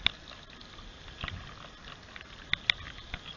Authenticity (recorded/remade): recorded